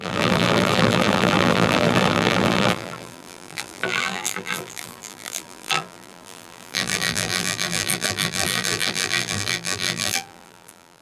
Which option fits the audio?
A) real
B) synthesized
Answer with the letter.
B